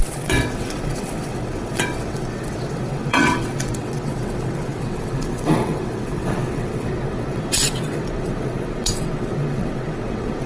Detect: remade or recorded remade